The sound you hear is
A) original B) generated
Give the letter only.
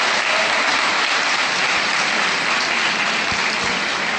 A